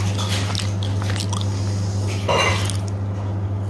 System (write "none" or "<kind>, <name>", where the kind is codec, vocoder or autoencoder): none